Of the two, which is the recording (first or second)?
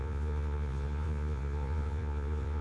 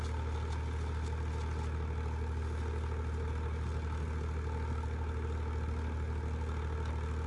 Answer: second